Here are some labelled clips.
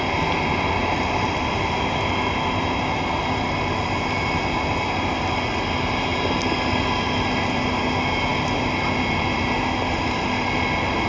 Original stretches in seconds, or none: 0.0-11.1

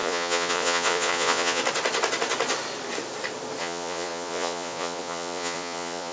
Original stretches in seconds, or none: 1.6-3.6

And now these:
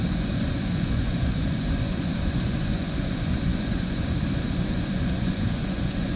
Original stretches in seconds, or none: none

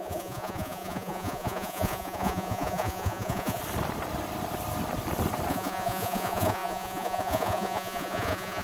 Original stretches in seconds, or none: 3.6-5.5

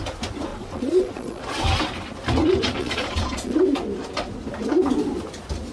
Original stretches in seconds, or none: 0.0-0.5; 1.4-2.8; 3.6-5.7